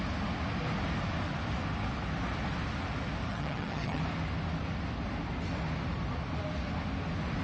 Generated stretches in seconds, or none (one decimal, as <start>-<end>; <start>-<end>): 3.3-4.0